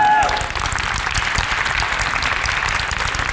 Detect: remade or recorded recorded